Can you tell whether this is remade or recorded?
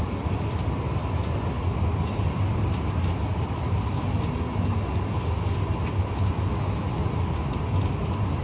recorded